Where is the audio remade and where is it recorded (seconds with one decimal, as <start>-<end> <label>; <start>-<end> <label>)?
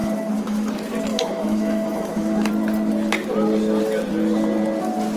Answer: 0.0-0.7 remade; 0.7-1.1 recorded; 1.1-2.5 remade; 2.5-5.2 recorded